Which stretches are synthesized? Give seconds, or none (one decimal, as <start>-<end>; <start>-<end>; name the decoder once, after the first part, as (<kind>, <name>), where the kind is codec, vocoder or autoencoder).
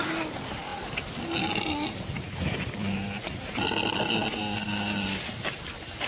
none